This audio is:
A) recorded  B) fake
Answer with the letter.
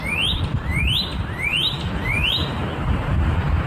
B